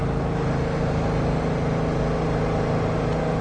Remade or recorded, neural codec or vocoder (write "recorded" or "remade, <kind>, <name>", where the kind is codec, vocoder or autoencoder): recorded